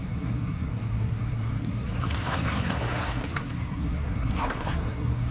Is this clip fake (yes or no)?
yes